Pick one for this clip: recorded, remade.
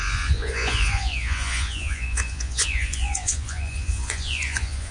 remade